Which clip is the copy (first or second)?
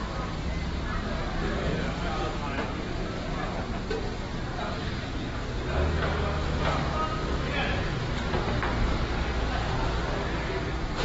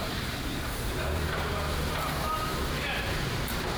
second